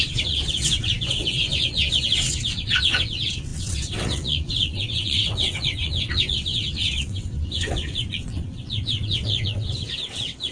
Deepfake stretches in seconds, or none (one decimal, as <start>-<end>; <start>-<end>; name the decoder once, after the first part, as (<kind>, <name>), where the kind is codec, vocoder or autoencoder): 0.0-10.5 (vocoder, WaveNeXt)